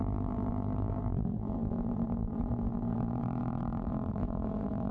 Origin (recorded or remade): remade